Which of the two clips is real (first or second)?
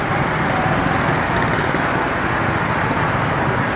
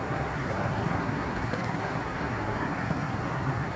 first